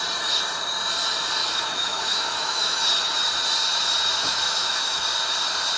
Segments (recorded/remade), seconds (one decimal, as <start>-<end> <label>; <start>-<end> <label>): 0.0-1.4 recorded; 1.4-2.8 remade; 2.8-4.2 recorded; 4.2-5.0 remade; 5.0-5.8 recorded